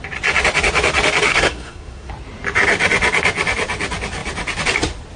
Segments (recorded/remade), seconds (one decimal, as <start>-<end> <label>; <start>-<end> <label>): 0.0-1.3 recorded; 1.3-2.1 remade; 2.1-5.2 recorded